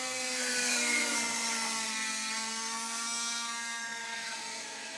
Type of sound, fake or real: fake